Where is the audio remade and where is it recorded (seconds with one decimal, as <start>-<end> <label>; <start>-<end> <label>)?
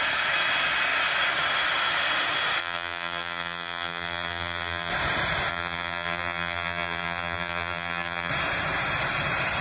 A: 0.0-2.6 recorded; 2.6-4.9 remade; 4.9-5.5 recorded; 5.5-8.3 remade; 8.3-9.6 recorded